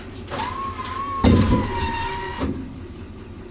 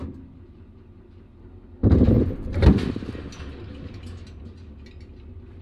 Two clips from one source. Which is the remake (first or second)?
first